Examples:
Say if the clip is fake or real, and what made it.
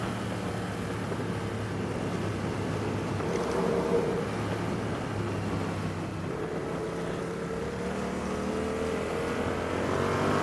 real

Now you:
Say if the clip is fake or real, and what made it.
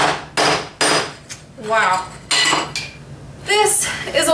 real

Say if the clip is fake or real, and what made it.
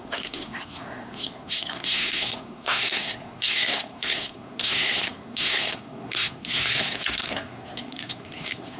fake, codec, SNAC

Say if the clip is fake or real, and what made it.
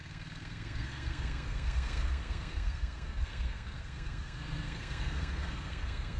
fake, codec, SNAC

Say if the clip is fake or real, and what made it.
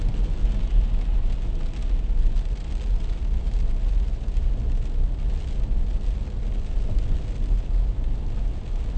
real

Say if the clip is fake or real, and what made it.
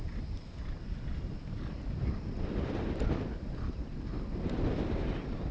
fake, vocoder, BigVGAN v2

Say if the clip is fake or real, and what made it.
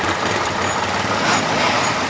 fake, vocoder, BigVGAN v2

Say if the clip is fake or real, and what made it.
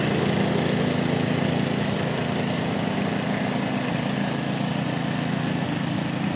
real